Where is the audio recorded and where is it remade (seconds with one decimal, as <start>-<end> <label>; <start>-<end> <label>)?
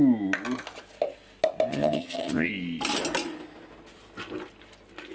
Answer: 0.0-1.7 recorded; 1.7-2.5 remade; 2.5-5.1 recorded